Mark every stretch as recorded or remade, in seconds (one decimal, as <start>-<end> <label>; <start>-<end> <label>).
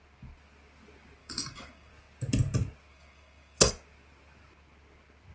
0.0-1.2 recorded; 1.2-1.9 remade; 1.9-2.9 recorded; 2.9-3.7 remade; 3.7-5.3 recorded